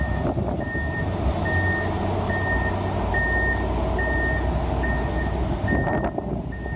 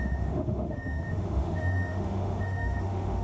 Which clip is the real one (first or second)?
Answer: first